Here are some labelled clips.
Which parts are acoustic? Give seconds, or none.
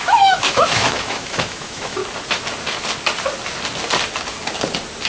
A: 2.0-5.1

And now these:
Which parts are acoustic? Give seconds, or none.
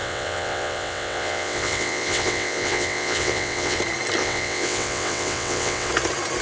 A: 3.8-4.2; 5.9-6.4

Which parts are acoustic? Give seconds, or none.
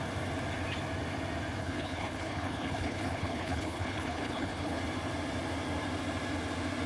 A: 0.0-1.6; 4.8-6.9